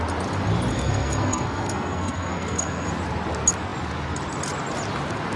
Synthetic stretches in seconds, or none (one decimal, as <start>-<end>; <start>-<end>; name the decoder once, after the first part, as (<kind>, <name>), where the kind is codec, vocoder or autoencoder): 0.7-2.9 (codec, SNAC)